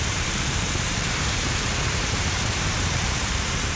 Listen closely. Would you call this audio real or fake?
fake